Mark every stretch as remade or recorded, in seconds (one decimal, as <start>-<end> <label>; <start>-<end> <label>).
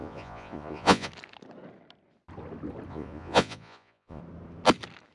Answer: 0.0-1.1 remade; 1.1-2.9 recorded; 2.9-4.2 remade; 4.2-5.1 recorded